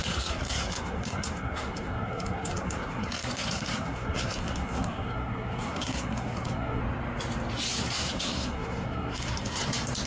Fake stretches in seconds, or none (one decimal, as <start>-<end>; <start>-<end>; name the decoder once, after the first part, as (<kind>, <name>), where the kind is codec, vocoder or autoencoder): 0.0-6.8 (codec, SNAC); 7.8-9.6